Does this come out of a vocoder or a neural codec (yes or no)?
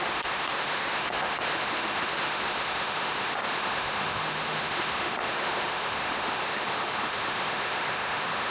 yes